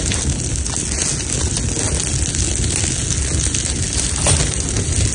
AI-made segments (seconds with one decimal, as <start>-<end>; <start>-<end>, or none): none